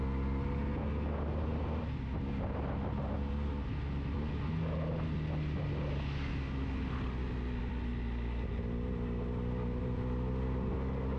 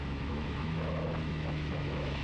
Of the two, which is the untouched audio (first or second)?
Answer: first